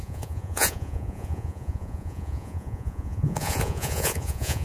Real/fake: fake